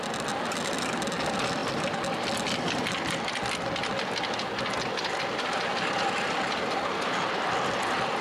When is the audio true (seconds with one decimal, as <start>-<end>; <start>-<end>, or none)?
0.0-8.2